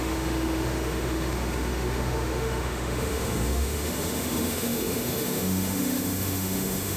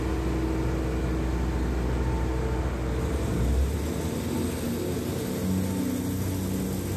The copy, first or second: first